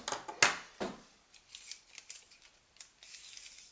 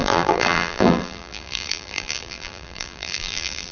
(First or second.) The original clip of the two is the first